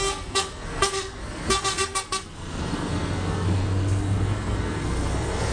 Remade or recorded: remade